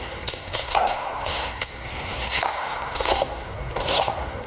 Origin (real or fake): fake